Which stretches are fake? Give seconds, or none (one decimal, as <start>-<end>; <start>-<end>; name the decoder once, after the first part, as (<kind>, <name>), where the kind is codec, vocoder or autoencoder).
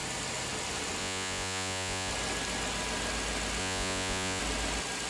1.0-2.1 (vocoder, Vocos); 3.6-4.4